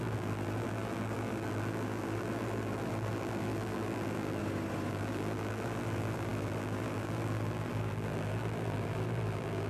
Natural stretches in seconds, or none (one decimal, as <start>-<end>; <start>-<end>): 4.4-4.9